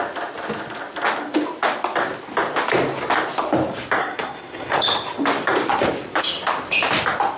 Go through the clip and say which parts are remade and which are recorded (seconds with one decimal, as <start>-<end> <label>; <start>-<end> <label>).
0.0-4.0 recorded; 4.0-4.8 remade; 4.8-7.4 recorded